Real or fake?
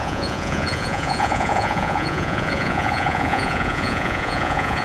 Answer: fake